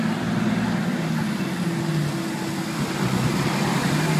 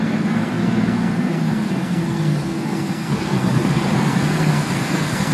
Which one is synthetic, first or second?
second